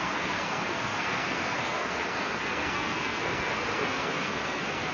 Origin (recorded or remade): remade